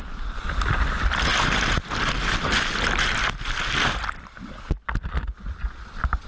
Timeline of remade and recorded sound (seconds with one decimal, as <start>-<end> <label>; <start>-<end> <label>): 0.0-6.3 recorded